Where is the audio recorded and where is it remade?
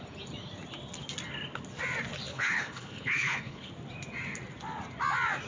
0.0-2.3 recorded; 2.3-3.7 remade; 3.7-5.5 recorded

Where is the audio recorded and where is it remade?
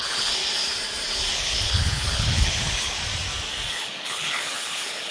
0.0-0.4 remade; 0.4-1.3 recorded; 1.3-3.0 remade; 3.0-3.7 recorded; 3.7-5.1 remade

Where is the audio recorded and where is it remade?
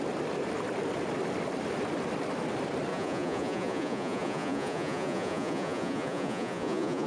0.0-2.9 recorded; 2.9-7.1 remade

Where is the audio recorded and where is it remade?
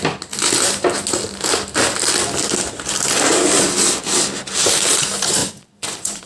0.0-5.4 recorded; 5.4-6.3 remade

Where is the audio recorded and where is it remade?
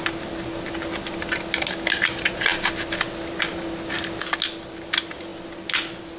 0.0-6.2 recorded